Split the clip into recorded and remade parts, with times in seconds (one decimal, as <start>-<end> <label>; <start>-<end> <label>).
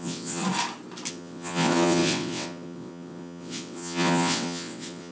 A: 0.0-0.4 remade; 0.4-1.1 recorded; 1.1-5.1 remade